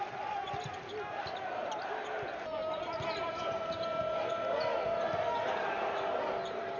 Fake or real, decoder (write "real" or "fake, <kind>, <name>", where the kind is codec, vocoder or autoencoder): real